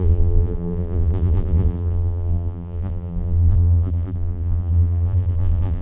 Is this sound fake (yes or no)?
yes